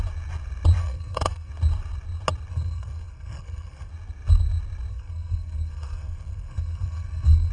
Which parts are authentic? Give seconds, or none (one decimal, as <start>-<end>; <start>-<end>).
0.0-0.8; 1.5-2.5; 3.9-4.9